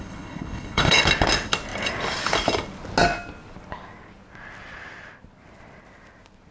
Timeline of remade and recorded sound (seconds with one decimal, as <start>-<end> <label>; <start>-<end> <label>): 0.0-1.0 remade; 1.0-6.5 recorded